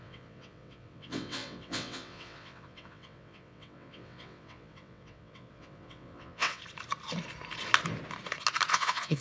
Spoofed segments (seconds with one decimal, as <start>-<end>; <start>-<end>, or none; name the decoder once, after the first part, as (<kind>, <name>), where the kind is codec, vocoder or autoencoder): 0.0-6.6 (vocoder, WaveNeXt); 8.7-9.2